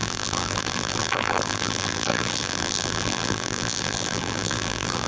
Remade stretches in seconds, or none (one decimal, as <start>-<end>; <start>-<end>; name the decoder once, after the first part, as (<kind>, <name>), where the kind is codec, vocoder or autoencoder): 0.0-5.1 (vocoder, BigVGAN v2)